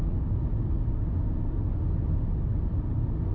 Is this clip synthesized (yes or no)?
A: no